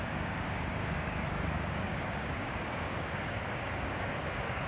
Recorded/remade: remade